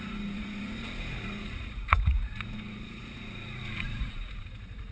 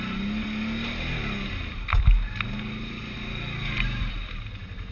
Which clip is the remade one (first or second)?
first